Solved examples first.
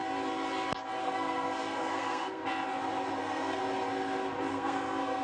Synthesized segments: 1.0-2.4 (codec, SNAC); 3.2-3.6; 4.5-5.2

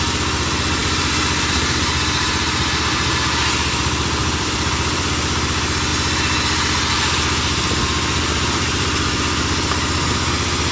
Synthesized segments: 0.8-2.6 (vocoder, BigVGAN v2); 4.2-5.1

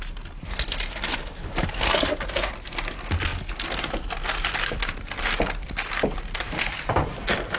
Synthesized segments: none